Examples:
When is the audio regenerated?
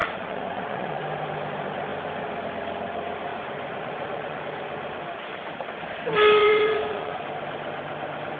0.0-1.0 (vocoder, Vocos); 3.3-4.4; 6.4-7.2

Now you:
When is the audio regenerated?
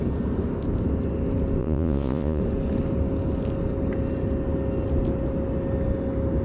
1.6-2.4 (vocoder, Vocos)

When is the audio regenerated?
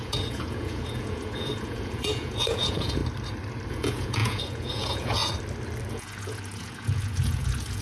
0.0-3.0 (vocoder, Vocos); 3.7-5.2; 5.9-7.8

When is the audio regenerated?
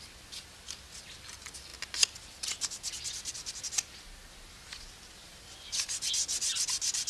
none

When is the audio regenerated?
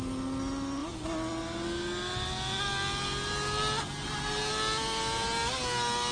none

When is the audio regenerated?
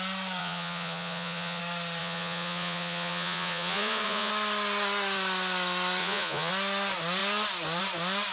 0.4-1.6 (vocoder, Vocos); 2.0-4.3; 6.0-6.5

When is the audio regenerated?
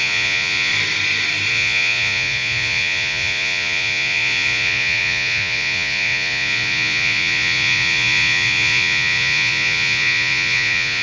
0.0-0.7 (vocoder, Vocos); 1.5-11.0